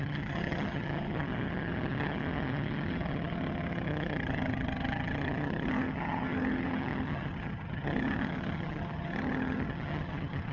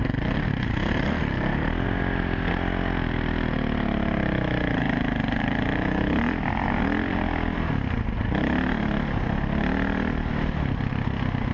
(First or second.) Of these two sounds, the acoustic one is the second